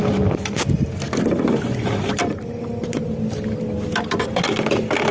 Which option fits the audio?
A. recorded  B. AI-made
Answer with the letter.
A